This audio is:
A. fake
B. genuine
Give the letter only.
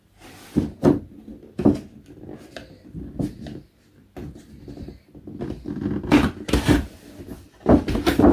A